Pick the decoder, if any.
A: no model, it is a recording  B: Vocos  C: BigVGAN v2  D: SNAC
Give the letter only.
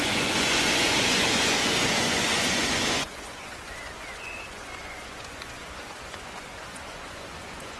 B